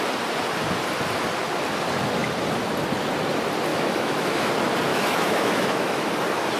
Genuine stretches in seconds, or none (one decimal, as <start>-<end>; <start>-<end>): 0.0-3.7; 4.5-4.9; 6.1-6.6